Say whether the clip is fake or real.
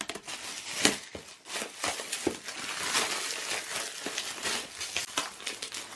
real